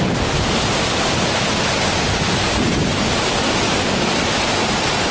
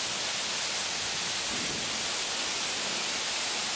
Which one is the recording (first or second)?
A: second